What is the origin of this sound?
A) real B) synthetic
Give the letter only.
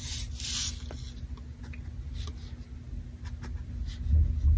A